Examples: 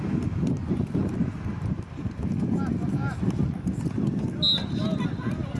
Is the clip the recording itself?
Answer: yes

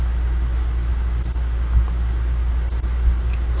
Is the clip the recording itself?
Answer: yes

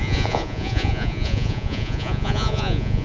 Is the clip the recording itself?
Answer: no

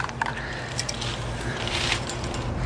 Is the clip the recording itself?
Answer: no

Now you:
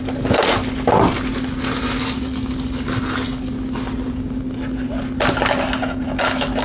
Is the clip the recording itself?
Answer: yes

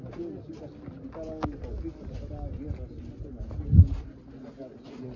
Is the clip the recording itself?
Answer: yes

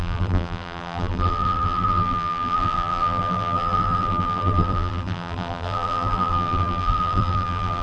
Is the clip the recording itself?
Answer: no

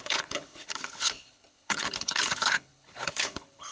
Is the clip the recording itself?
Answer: no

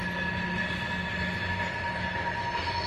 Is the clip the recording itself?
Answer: yes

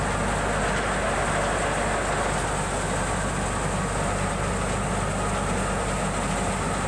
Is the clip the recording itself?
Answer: yes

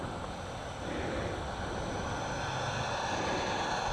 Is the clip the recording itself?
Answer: yes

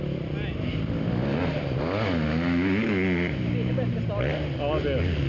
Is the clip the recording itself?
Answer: yes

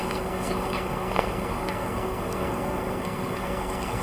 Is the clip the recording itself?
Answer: no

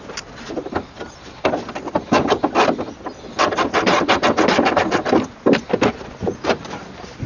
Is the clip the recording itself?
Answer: yes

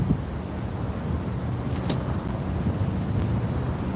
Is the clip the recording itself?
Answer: yes